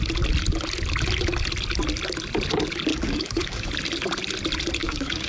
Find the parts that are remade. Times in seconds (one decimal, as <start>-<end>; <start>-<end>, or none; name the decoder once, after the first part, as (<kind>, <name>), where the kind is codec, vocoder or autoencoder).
2.9-3.7 (codec, DAC); 4.8-5.3